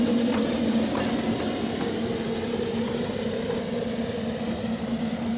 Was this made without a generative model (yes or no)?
yes